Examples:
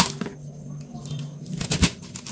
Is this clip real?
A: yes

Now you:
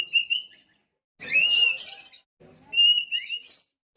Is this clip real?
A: yes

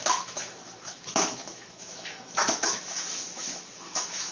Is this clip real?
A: no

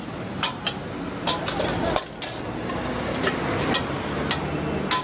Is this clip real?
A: yes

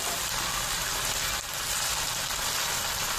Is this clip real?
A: yes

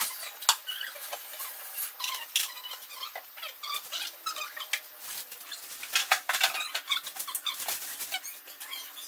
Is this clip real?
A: yes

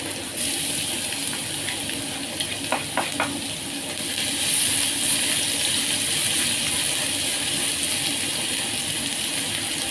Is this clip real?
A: yes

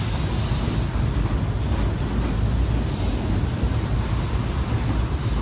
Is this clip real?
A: yes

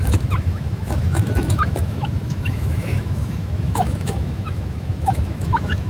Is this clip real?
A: no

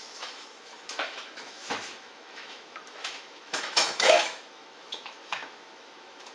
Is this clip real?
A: no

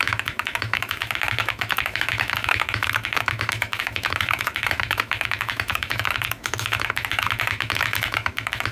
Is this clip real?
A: no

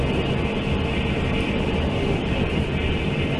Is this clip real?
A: yes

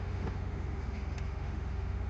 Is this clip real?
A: no